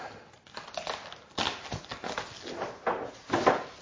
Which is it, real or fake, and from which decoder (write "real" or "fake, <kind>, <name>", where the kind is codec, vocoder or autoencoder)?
real